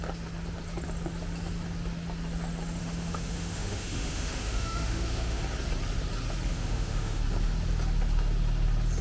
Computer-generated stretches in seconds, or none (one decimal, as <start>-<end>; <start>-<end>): 2.8-5.4; 6.5-7.2